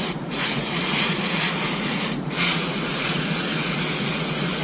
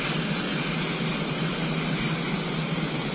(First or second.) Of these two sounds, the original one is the second